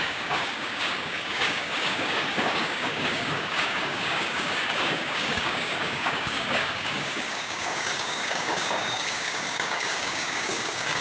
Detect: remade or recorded remade